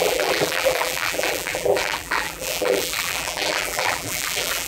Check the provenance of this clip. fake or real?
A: fake